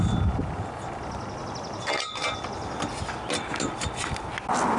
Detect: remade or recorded recorded